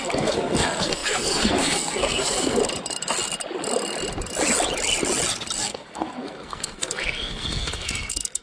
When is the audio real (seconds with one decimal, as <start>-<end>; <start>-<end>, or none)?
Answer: 2.6-5.6